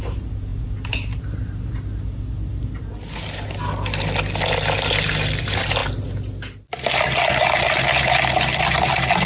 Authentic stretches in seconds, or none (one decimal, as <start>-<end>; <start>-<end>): 0.0-9.3